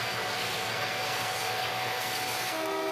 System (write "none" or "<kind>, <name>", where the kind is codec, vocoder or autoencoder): codec, SNAC